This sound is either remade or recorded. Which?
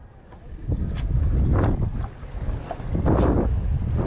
recorded